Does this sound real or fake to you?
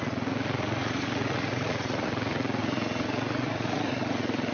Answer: fake